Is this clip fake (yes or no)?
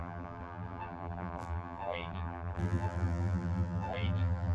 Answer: yes